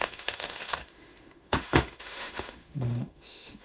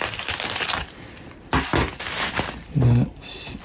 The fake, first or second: first